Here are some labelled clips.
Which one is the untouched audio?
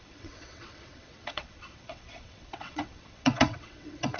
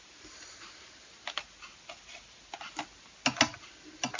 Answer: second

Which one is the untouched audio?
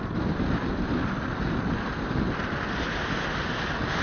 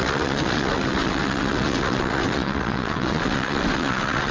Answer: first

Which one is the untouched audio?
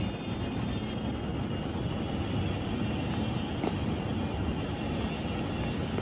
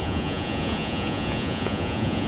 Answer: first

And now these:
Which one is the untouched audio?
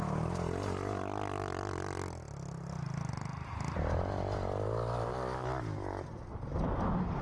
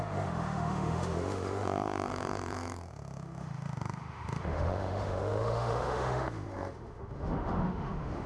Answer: first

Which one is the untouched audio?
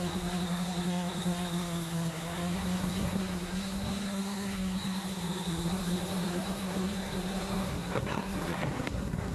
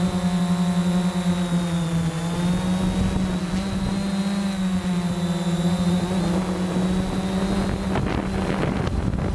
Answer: second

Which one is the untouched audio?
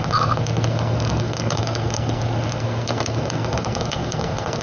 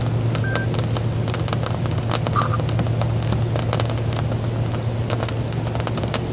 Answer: second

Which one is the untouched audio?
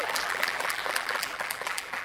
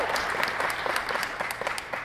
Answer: second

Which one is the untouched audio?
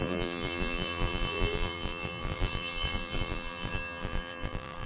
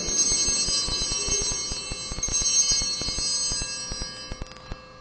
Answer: second